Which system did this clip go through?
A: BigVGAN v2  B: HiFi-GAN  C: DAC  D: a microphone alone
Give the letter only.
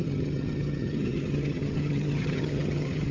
B